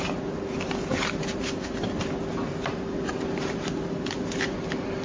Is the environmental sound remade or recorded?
recorded